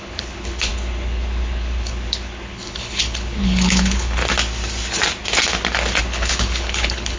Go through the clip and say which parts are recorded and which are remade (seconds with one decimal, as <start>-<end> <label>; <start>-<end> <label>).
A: 0.0-4.2 remade; 4.2-6.0 recorded; 6.0-7.2 remade